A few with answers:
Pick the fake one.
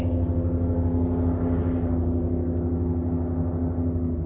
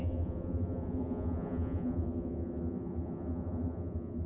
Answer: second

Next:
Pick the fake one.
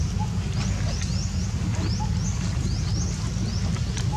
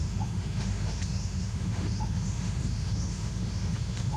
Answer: second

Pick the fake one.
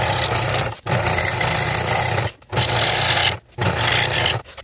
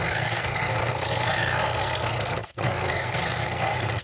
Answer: second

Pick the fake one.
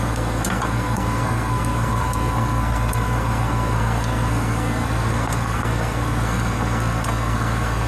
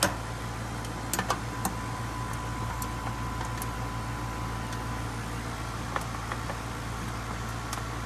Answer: first